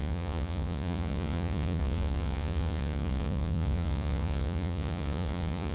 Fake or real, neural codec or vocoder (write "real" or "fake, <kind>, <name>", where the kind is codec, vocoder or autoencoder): fake, vocoder, Vocos